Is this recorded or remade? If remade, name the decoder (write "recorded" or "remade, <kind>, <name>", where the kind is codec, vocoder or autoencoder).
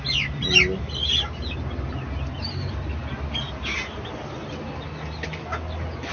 recorded